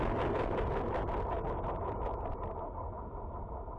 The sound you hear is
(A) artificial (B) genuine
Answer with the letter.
B